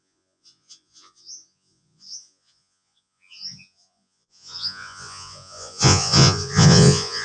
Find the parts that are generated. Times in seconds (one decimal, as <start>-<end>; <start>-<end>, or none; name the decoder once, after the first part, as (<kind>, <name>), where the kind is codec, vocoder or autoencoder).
0.0-7.2 (vocoder, Vocos)